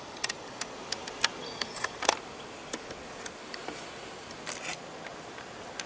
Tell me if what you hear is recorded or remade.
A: recorded